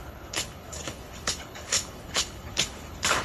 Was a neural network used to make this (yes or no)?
yes